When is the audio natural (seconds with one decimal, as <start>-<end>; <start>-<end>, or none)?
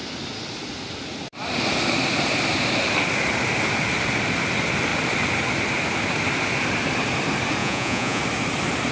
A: 0.0-7.6; 8.2-8.9